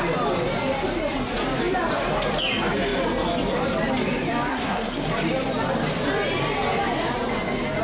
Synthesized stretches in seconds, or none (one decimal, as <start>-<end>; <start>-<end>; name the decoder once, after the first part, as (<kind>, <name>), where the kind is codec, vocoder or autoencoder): 4.5-5.1 (codec, SNAC)